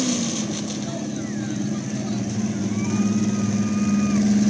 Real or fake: real